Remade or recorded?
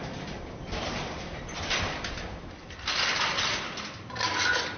recorded